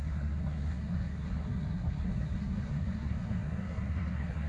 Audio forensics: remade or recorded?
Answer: remade